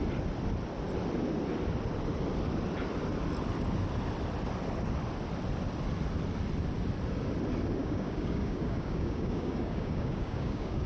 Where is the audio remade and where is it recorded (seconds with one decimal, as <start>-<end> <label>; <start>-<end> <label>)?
0.0-7.8 recorded; 7.8-10.9 remade